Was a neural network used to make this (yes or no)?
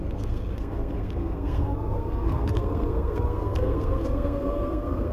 yes